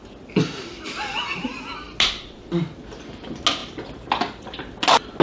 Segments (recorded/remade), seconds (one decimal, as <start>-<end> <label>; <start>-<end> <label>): 0.0-5.2 recorded